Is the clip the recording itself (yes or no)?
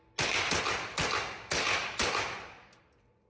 yes